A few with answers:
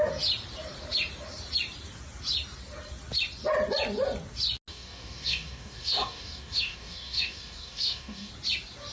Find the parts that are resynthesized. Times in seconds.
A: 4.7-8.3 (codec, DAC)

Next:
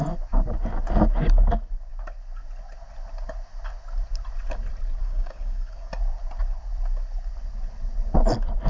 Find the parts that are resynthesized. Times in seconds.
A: 5.0-5.9 (codec, DAC)

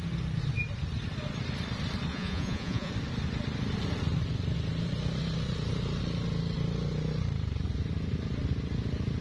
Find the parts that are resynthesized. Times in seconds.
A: 2.1-2.9 (vocoder, Vocos)